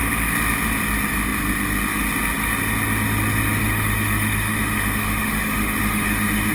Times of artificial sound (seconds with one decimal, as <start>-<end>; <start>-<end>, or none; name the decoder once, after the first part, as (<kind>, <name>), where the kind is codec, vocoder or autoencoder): 3.6-6.5 (autoencoder, DAC-VAE)